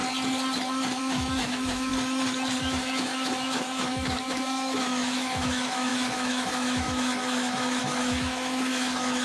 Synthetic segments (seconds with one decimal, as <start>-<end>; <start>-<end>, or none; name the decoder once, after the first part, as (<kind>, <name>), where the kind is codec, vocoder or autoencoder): 1.0-1.9 (autoencoder, DAC-VAE); 2.6-9.2